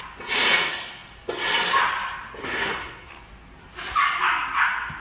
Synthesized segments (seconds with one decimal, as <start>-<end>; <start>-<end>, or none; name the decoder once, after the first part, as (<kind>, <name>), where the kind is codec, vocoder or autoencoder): 2.4-3.1 (codec, SNAC)